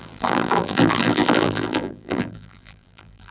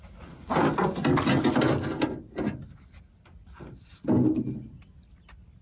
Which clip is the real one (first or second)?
second